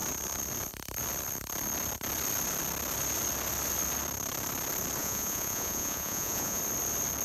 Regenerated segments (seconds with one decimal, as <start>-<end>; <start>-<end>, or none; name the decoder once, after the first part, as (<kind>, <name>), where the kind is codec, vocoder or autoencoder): 5.0-6.6 (vocoder, Vocos)